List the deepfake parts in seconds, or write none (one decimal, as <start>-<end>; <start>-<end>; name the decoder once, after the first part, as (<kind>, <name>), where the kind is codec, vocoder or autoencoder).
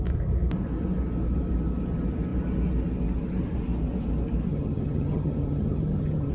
4.5-6.3 (vocoder, HiFi-GAN)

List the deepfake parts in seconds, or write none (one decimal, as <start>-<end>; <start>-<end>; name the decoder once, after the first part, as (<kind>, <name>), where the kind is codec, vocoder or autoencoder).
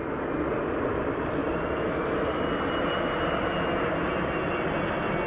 none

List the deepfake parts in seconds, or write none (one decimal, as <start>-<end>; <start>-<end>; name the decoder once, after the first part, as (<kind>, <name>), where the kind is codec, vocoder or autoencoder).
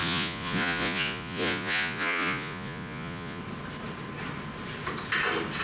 0.0-3.4 (vocoder, Vocos)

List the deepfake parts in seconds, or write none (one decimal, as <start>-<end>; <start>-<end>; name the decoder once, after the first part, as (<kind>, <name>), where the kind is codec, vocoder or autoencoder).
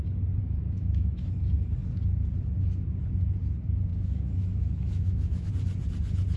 0.4-1.3 (autoencoder, DAC-VAE); 3.9-5.5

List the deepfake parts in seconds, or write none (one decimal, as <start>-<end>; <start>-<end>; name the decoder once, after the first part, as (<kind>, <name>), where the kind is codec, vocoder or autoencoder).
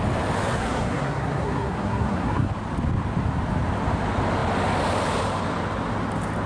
0.6-2.5 (codec, SNAC)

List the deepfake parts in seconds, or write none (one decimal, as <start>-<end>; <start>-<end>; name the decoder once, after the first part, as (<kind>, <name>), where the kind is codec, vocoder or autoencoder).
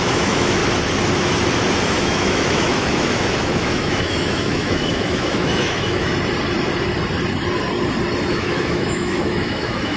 0.0-0.6 (autoencoder, DAC-VAE); 2.0-6.1; 8.3-10.0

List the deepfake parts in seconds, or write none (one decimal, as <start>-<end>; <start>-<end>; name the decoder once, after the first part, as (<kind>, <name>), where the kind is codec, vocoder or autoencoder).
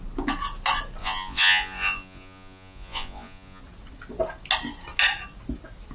1.0-3.6 (vocoder, Vocos)